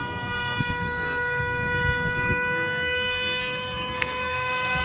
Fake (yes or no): yes